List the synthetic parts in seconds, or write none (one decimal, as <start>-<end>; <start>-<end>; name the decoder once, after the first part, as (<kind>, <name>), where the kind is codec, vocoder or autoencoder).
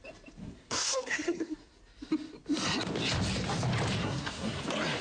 0.4-1.7 (codec, SNAC); 4.0-4.6